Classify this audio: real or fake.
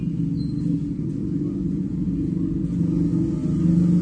real